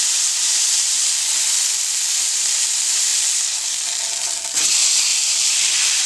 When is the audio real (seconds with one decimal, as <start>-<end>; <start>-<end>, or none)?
0.0-0.5; 1.1-5.1